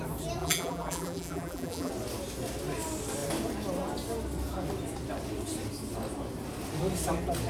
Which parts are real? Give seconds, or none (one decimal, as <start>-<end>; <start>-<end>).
0.0-0.4; 1.9-7.5